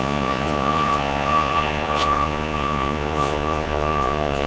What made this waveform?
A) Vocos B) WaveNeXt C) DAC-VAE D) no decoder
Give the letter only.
A